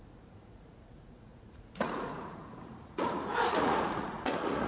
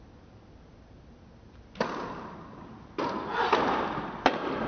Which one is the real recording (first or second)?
second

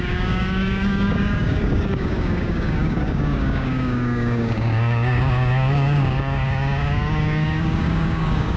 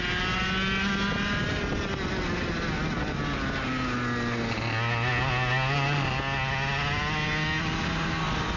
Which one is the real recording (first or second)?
second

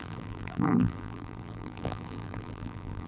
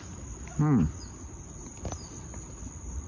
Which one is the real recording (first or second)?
second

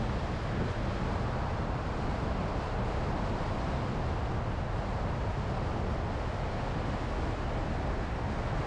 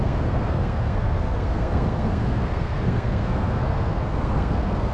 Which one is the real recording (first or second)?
first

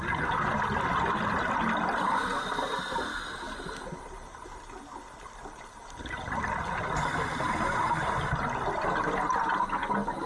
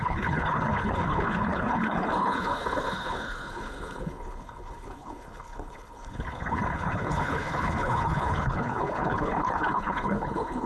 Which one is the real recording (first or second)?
first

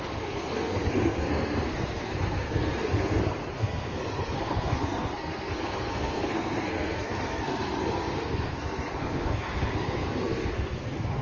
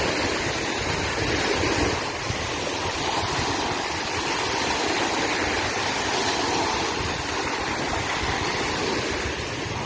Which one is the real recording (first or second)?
second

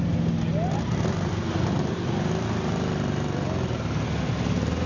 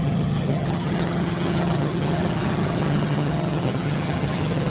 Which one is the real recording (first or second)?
first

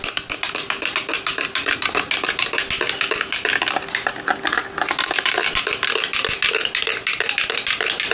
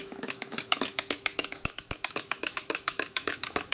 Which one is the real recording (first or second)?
first